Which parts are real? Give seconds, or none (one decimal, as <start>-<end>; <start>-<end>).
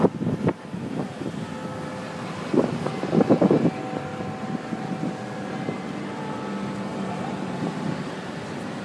0.0-4.1; 4.8-6.9; 8.3-8.8